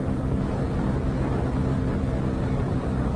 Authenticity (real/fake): real